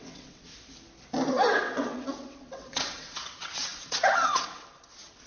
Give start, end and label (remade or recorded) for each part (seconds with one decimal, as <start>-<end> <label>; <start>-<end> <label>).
0.0-0.5 remade; 0.5-1.3 recorded; 1.3-5.3 remade